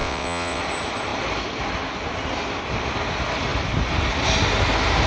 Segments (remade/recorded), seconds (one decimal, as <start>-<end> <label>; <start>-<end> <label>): 0.0-0.6 remade; 0.6-5.1 recorded